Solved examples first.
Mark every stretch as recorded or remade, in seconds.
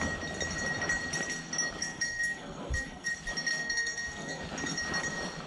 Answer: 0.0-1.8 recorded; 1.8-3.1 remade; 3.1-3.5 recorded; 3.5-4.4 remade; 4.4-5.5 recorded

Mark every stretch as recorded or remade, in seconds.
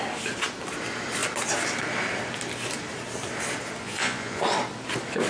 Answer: 0.0-3.8 recorded; 3.8-4.4 remade; 4.4-5.3 recorded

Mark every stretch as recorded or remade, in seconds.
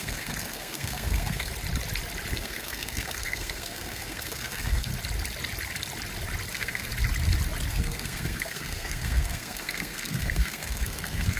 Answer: 0.0-1.5 remade; 1.5-2.3 recorded; 2.3-4.9 remade; 4.9-6.5 recorded; 6.5-6.9 remade; 6.9-7.7 recorded; 7.7-11.4 remade